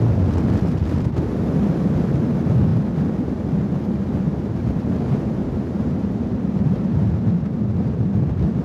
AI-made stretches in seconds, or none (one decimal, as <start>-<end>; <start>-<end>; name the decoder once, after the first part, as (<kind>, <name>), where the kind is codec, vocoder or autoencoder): 5.4-7.1 (vocoder, BigVGAN v2)